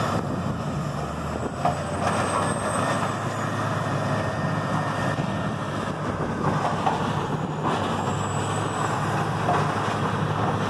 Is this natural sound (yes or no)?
yes